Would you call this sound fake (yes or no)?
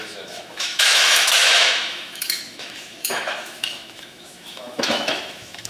yes